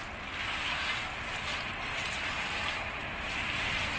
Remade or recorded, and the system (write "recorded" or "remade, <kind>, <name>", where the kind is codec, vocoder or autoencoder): recorded